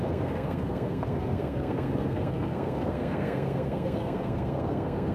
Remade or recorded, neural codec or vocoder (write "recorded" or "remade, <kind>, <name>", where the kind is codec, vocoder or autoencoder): remade, codec, SNAC